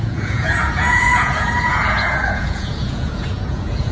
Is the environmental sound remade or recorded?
remade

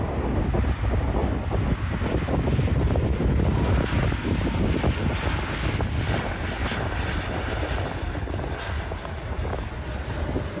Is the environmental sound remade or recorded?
recorded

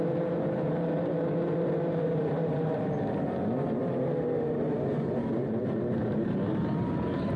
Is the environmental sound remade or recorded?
remade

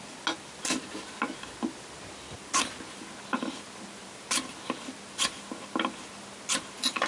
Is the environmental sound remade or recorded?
recorded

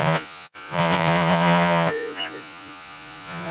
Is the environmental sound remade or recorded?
remade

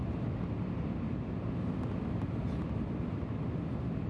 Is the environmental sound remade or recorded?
recorded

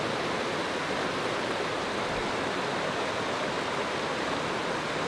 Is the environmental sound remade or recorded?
recorded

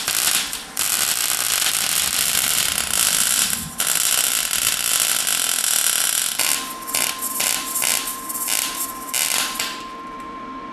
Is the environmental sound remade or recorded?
remade